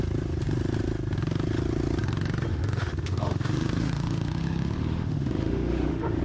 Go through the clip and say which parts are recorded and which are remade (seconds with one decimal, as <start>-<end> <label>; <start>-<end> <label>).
0.0-2.5 recorded; 2.5-6.2 remade